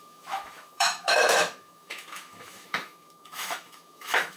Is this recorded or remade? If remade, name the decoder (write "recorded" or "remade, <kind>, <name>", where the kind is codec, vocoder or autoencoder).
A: remade, autoencoder, DAC-VAE